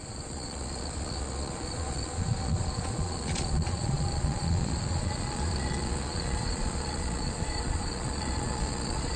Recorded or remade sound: remade